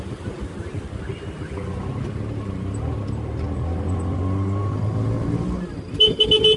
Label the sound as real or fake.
real